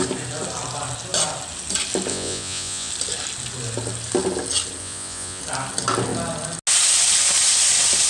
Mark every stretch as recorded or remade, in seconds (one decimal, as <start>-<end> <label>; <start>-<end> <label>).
0.0-2.1 recorded; 2.1-2.9 remade; 2.9-4.8 recorded; 4.8-5.4 remade; 5.4-8.1 recorded